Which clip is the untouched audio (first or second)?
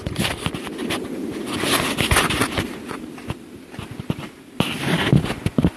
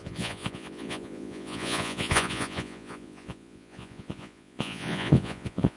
first